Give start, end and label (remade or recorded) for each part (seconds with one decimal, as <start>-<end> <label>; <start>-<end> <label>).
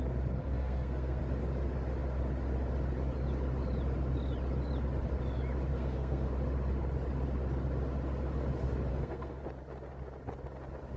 0.0-0.4 recorded; 0.4-1.2 remade; 1.2-5.7 recorded; 5.7-6.3 remade; 6.3-8.9 recorded; 8.9-9.4 remade; 9.4-11.0 recorded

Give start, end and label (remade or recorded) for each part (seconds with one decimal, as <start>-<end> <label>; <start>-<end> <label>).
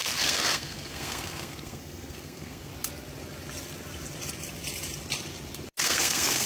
0.0-2.7 remade; 2.7-5.8 recorded; 5.8-6.5 remade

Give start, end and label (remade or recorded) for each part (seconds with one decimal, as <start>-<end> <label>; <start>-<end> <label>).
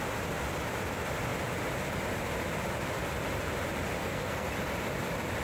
0.0-4.0 recorded; 4.0-4.5 remade; 4.5-5.4 recorded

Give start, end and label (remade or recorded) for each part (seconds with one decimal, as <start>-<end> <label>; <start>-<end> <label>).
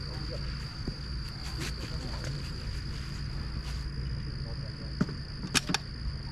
0.0-6.3 recorded